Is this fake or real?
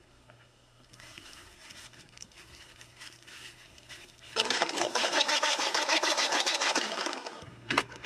fake